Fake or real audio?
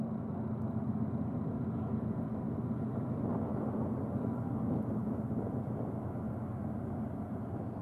real